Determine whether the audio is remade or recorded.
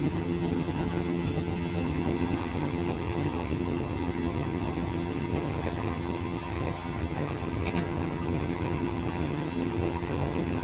remade